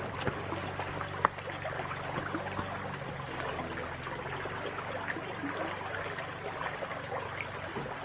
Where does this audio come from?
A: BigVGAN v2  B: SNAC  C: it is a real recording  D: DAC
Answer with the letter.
C